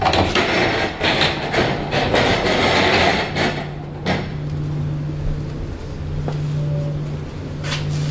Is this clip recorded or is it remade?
recorded